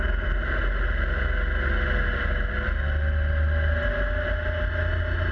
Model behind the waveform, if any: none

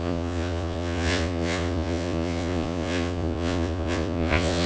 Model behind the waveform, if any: vocoder, Vocos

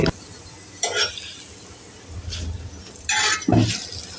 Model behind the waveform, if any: none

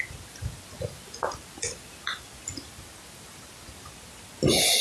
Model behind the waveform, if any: none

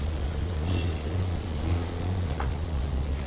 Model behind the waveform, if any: vocoder, Vocos